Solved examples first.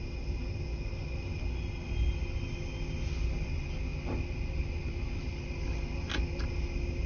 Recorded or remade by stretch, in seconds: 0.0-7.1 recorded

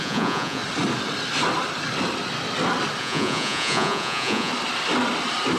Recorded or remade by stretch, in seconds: 0.0-0.6 remade; 0.6-3.0 recorded; 3.0-4.5 remade; 4.5-5.6 recorded

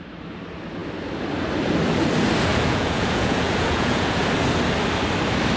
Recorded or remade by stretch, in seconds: 0.0-2.5 recorded; 2.5-4.2 remade; 4.2-5.6 recorded